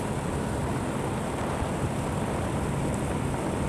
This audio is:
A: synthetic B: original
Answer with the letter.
B